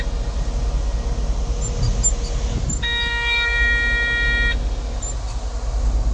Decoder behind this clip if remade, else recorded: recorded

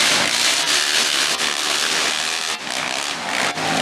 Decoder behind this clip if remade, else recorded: recorded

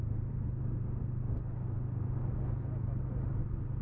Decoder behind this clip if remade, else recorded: recorded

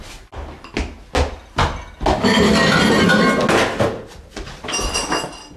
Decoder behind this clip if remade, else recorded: recorded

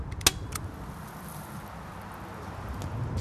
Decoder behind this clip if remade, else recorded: recorded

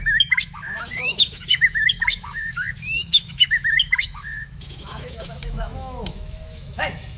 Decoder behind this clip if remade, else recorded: remade, autoencoder, DAC-VAE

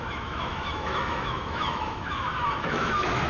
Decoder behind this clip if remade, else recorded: remade, autoencoder, DAC-VAE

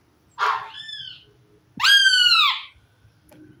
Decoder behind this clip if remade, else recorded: recorded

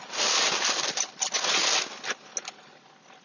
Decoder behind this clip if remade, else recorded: recorded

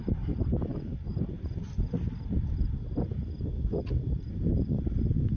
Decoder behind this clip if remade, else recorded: recorded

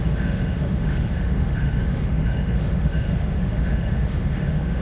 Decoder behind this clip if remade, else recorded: remade, autoencoder, DAC-VAE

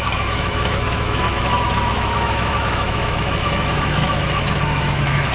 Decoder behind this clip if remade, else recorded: remade, autoencoder, DAC-VAE